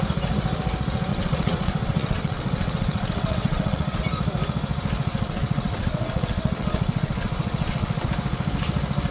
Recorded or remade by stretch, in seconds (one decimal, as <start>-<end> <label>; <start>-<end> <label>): 0.0-1.1 recorded; 1.1-4.0 remade; 4.0-5.0 recorded; 5.0-8.1 remade; 8.1-9.1 recorded